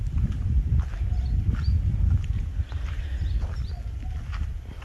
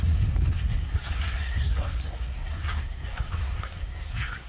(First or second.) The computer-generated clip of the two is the second